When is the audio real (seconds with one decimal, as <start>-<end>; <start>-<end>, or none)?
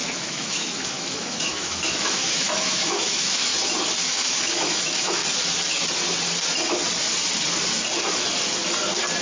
3.5-4.0; 5.2-9.2